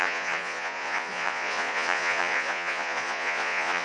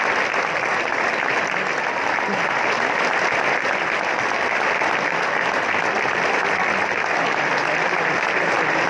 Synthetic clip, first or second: first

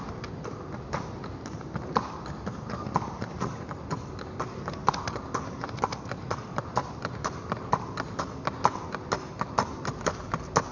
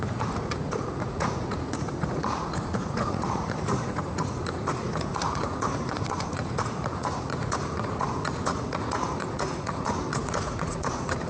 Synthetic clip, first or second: second